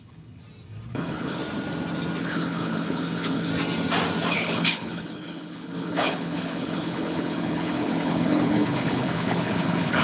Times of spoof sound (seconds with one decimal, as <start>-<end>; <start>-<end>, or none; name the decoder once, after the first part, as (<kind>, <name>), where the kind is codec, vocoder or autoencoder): 0.0-0.4 (codec, HILCodec); 0.9-1.4; 2.2-3.5; 4.3-10.0